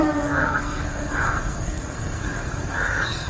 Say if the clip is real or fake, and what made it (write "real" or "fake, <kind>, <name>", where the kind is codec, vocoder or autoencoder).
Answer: fake, codec, SNAC